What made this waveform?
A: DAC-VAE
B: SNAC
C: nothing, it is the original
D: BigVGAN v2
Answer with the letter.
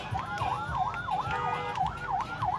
C